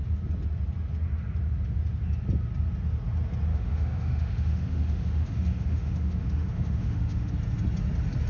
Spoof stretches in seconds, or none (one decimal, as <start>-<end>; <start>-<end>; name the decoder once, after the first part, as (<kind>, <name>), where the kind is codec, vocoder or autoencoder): 3.5-7.3 (autoencoder, DAC-VAE)